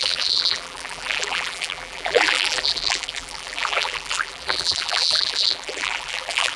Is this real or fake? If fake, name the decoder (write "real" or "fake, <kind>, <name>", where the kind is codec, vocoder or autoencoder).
fake, vocoder, BigVGAN v2